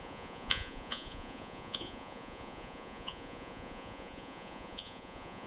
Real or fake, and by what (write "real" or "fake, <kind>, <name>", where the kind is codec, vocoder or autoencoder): fake, vocoder, Vocos